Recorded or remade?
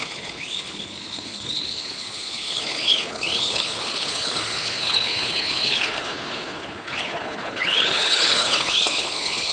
remade